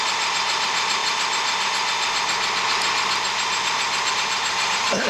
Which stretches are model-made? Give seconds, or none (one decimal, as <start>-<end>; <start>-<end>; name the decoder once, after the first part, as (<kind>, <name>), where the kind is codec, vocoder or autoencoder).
0.0-1.0 (vocoder, BigVGAN v2); 4.1-5.1